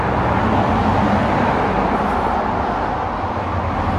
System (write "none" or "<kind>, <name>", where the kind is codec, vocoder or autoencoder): none